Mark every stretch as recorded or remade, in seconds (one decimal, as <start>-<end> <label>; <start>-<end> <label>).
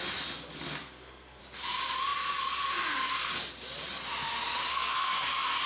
0.0-0.8 recorded; 0.8-1.4 remade; 1.4-4.7 recorded; 4.7-5.2 remade; 5.2-5.7 recorded